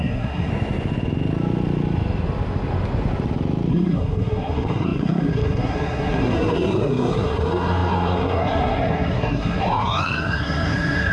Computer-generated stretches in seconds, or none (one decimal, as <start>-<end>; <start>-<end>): 0.0-0.5; 3.7-11.1